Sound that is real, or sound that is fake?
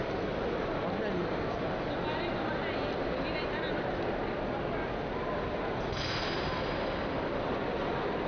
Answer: real